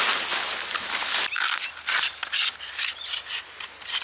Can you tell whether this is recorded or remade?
recorded